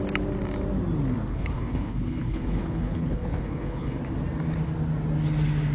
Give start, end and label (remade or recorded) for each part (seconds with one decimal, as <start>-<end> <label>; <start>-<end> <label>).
0.0-1.3 recorded; 1.3-4.0 remade; 4.0-5.7 recorded